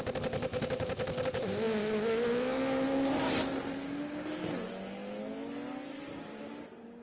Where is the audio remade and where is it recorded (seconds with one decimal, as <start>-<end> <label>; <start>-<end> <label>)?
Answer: 0.0-7.0 recorded